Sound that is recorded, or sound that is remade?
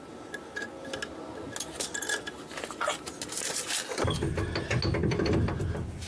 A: recorded